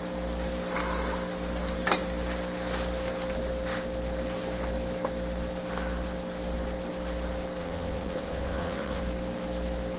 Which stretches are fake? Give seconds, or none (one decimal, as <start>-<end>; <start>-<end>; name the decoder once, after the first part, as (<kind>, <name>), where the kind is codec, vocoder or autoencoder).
7.6-9.0 (vocoder, WaveNeXt)